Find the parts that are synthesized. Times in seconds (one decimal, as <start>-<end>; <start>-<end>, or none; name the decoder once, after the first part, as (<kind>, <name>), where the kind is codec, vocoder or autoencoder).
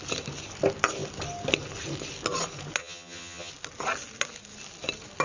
2.8-3.5 (vocoder, HiFi-GAN)